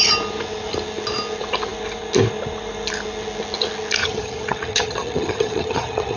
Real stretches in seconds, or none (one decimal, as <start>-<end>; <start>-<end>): 0.0-4.0